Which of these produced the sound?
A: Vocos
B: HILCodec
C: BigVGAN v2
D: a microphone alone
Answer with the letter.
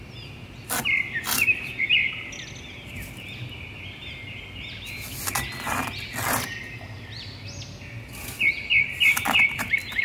D